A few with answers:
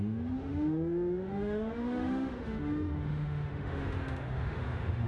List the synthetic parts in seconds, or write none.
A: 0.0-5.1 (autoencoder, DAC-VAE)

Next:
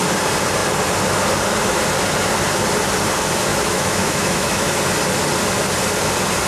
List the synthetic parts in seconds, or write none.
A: 3.5-4.8 (autoencoder, DAC-VAE)

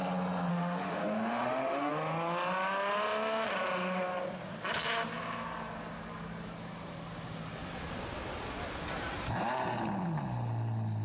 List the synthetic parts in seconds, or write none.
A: 0.5-1.9 (autoencoder, DAC-VAE)

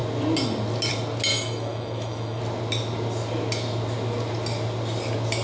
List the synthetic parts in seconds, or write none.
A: 1.3-2.4 (autoencoder, DAC-VAE)

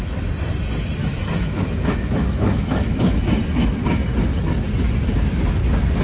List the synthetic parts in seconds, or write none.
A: 1.0-3.2 (autoencoder, DAC-VAE)

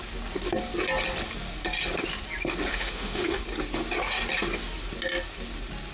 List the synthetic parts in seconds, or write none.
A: 2.7-3.4 (autoencoder, DAC-VAE)

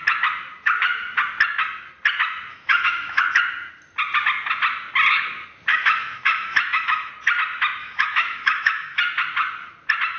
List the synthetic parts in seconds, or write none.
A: 2.5-3.2 (autoencoder, DAC-VAE); 5.7-7.1; 7.8-9.0

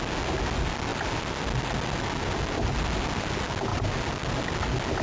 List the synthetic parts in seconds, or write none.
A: none